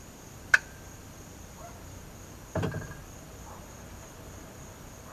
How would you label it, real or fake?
fake